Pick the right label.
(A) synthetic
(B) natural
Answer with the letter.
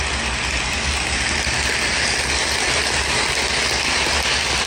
B